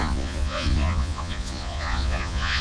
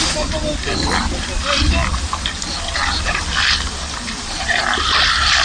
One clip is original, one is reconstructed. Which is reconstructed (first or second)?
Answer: first